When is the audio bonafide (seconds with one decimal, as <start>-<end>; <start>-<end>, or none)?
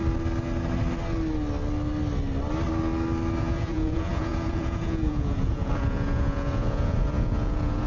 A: 0.0-3.4